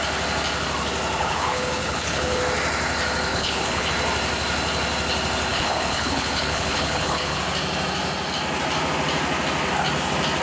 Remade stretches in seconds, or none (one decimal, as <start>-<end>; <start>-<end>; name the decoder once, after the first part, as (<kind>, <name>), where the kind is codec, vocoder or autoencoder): 1.2-2.4 (codec, HILCodec); 3.3-3.9; 5.5-7.4